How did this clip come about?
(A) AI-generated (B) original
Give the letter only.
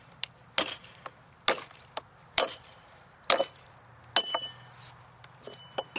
B